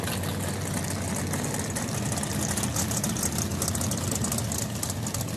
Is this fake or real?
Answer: real